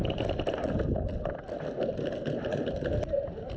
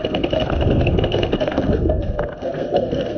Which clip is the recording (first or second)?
first